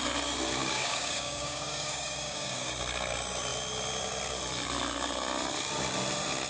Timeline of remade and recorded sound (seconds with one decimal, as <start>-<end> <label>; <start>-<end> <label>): 0.0-0.6 recorded; 0.6-2.7 remade; 2.7-6.5 recorded